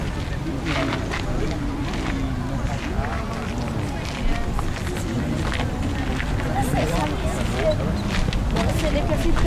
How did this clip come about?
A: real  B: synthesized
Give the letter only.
A